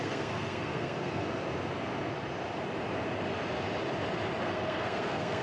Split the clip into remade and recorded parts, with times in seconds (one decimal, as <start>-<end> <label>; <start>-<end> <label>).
0.0-1.2 remade; 1.2-4.4 recorded; 4.4-5.4 remade